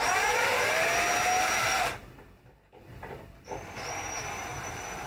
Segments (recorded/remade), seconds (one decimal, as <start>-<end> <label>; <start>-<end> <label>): 0.0-2.0 recorded; 2.0-5.1 remade